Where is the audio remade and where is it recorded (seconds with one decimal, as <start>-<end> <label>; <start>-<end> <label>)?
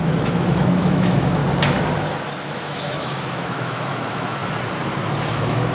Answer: 0.0-1.4 remade; 1.4-2.5 recorded; 2.5-4.4 remade; 4.4-5.3 recorded; 5.3-5.7 remade